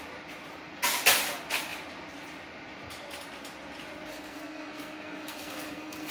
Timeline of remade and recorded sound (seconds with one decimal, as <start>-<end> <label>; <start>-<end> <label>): 0.0-4.1 recorded; 4.1-6.1 remade